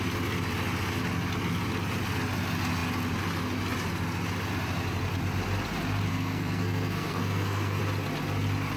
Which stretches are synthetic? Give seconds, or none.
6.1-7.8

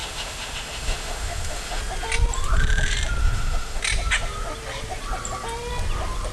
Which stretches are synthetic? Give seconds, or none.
0.0-1.8; 3.2-3.8

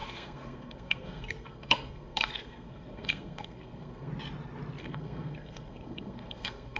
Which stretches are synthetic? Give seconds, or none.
0.0-4.1; 4.8-6.8

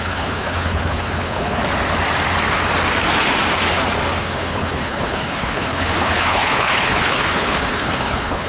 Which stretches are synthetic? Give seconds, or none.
0.0-1.6; 4.2-8.5

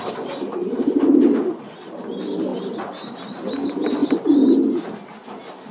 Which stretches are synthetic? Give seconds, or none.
0.6-1.5; 2.5-3.1; 4.0-4.6

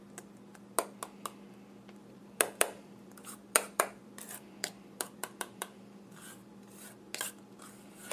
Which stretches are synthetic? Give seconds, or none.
2.0-6.9

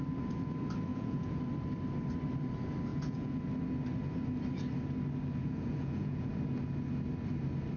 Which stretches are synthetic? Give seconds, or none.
0.9-1.4; 2.9-3.4; 5.4-6.3

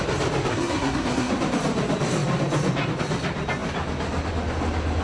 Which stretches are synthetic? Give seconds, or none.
0.5-1.3